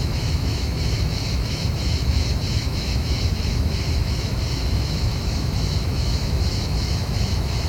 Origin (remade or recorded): remade